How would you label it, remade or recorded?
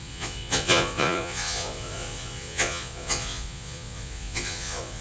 remade